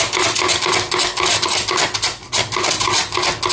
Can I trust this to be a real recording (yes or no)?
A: yes